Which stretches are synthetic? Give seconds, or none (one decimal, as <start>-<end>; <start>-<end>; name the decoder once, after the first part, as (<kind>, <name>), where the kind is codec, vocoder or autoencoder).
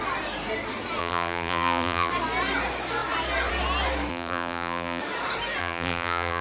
1.0-2.1 (vocoder, BigVGAN v2); 4.1-5.0; 5.6-6.4